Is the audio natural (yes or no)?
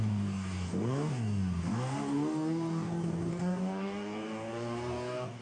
no